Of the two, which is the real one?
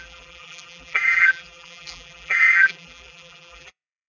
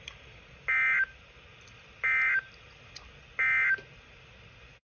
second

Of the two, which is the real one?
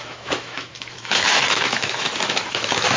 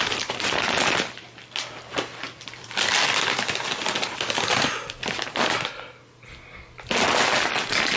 second